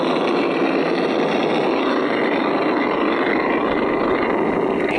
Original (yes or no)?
yes